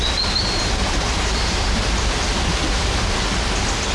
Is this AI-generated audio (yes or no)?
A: no